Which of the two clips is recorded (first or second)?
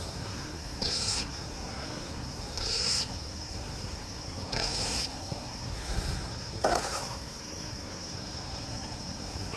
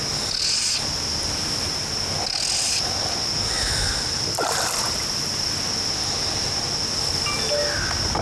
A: second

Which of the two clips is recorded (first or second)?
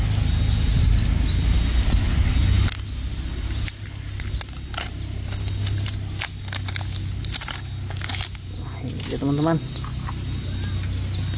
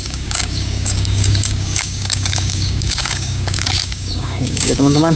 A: first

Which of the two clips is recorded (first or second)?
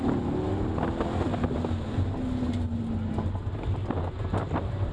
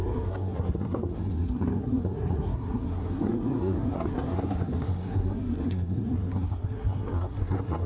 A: first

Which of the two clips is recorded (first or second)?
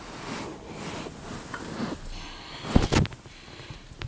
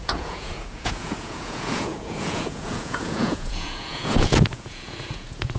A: first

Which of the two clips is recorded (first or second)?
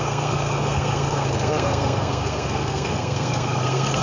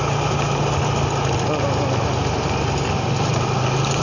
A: second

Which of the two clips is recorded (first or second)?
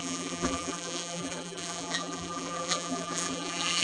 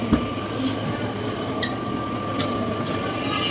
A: second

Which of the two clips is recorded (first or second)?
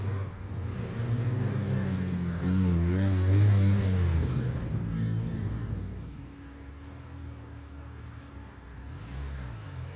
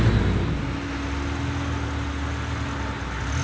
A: second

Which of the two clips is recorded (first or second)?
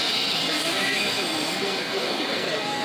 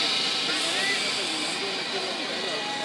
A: second